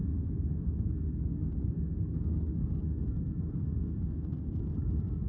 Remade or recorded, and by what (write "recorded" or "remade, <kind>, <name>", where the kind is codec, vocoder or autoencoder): remade, codec, SNAC